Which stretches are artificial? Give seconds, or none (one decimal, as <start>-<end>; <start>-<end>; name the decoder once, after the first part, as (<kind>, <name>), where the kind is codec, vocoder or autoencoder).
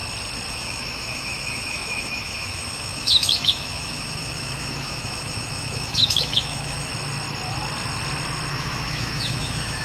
0.5-6.9 (autoencoder, DAC-VAE); 8.5-9.8